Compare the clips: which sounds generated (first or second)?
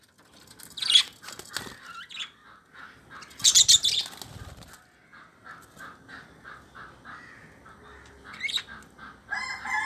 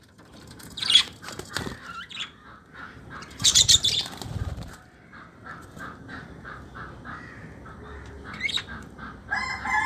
second